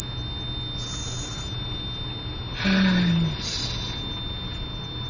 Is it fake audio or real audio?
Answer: real